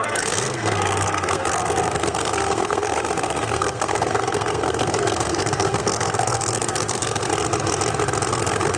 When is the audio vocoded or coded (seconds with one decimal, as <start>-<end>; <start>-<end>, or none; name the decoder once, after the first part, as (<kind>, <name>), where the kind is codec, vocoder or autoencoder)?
0.0-7.3 (codec, SNAC); 8.3-8.8